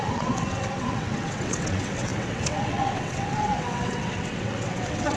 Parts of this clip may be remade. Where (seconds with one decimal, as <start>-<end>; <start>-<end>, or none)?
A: 0.0-5.2